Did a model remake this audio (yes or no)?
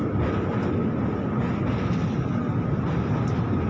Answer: no